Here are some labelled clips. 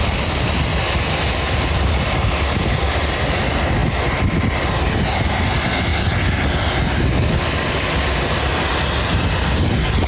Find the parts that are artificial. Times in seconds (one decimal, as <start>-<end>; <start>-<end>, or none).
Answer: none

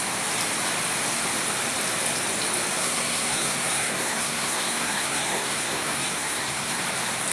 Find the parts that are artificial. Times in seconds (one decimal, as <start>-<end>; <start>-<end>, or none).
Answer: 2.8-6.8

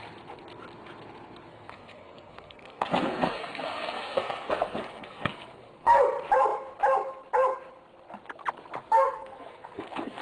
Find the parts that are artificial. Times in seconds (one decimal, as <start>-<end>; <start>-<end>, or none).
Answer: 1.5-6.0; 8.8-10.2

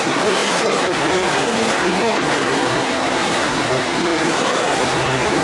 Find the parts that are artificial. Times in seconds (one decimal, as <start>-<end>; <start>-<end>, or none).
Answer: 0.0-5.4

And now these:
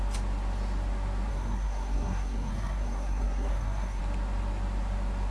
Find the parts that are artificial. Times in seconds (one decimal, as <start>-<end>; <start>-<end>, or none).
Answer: 1.3-4.0

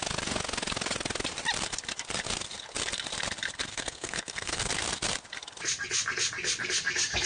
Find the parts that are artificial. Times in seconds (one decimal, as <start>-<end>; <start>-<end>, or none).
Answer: 3.7-4.7